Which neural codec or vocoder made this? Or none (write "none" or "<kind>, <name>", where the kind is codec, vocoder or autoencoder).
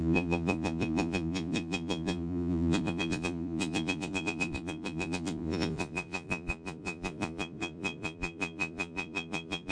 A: vocoder, Vocos